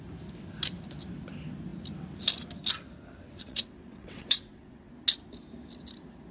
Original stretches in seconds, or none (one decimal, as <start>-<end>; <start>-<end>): 0.0-3.4; 4.9-6.3